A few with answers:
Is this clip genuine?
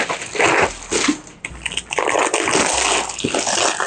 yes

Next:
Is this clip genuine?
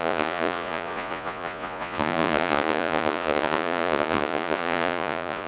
no